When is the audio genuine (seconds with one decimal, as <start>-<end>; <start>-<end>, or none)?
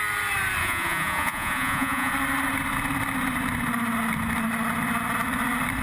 0.0-0.6; 2.1-5.8